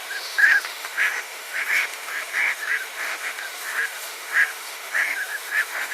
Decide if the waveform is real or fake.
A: fake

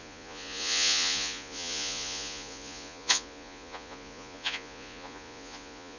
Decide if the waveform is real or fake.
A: fake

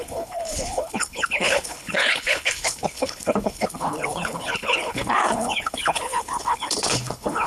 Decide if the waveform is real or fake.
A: fake